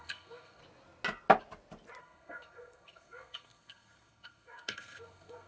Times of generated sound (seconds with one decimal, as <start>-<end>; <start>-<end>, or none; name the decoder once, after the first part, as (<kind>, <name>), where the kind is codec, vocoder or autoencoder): 0.0-0.6 (codec, SNAC); 2.0-5.5